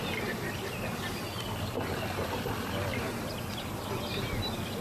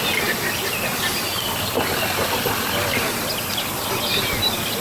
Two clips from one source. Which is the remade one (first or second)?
second